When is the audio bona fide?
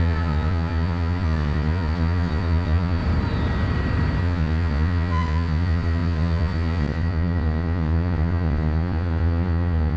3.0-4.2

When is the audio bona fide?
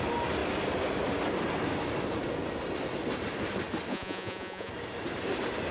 0.0-3.9; 4.7-5.7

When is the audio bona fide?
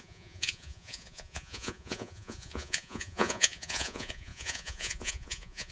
none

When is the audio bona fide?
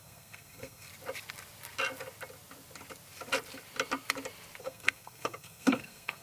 0.9-4.6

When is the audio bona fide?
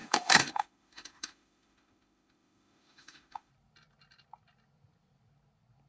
3.5-5.9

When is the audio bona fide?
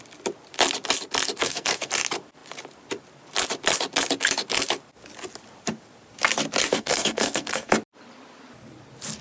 0.0-1.4; 1.9-6.7; 7.7-9.2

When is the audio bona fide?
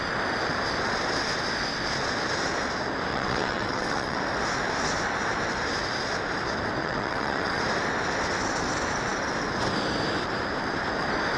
0.0-3.1; 4.2-6.8; 7.6-11.4